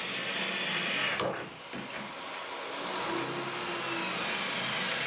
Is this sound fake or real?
real